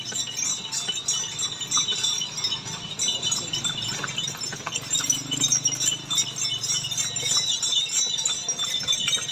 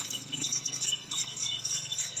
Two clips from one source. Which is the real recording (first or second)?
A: first